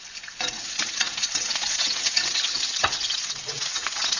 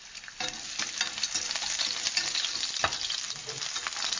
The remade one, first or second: first